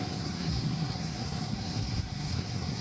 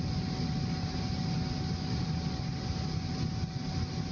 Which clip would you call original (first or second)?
second